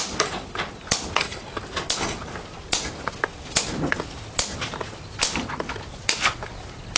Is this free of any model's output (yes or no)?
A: yes